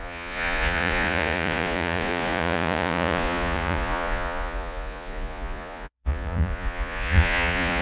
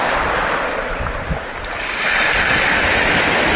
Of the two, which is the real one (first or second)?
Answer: second